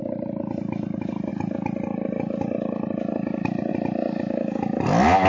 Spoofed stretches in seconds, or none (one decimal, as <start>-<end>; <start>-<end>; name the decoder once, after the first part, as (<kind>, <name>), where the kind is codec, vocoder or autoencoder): none